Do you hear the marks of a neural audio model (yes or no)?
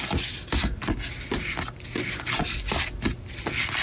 no